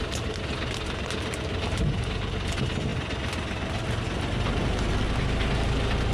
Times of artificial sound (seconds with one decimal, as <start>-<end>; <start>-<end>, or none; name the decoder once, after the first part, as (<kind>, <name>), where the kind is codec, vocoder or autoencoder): none